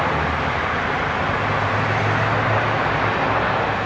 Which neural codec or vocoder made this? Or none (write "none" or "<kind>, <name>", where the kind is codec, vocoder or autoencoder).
none